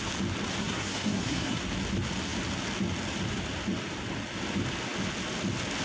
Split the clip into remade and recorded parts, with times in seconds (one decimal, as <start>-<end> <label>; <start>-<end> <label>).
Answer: 0.0-0.6 recorded; 0.6-1.6 remade; 1.6-5.8 recorded